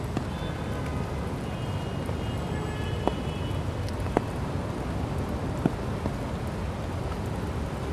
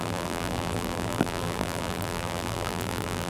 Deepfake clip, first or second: second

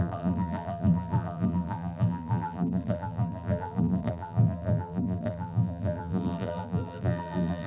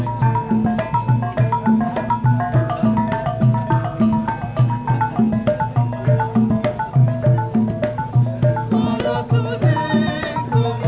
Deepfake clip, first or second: first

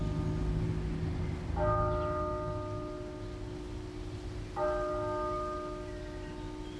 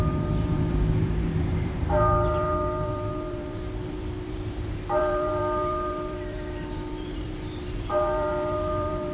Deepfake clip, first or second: second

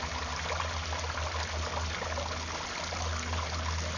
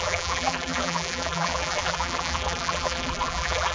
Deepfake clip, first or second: second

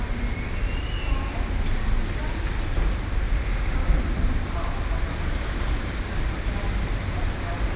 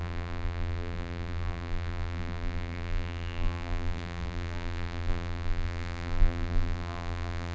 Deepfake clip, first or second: second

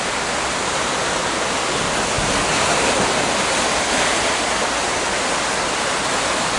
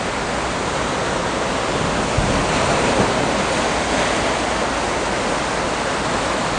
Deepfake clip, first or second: first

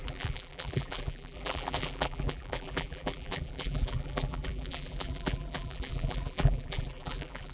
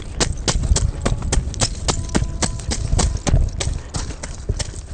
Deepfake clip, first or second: first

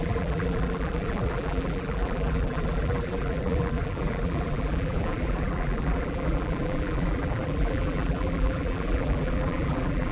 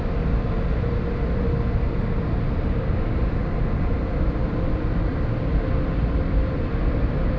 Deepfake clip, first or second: first